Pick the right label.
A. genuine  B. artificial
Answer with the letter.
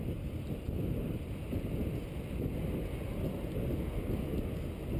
A